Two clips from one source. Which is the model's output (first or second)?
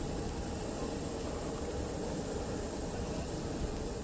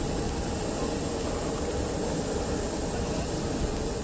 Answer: first